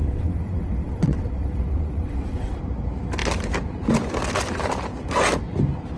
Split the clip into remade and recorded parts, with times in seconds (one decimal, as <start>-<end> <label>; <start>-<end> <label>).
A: 0.0-2.6 remade; 2.6-6.0 recorded